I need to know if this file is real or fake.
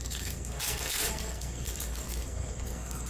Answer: fake